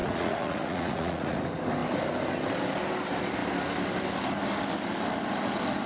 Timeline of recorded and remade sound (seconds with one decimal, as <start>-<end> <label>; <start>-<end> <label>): 0.0-1.4 remade; 1.4-5.9 recorded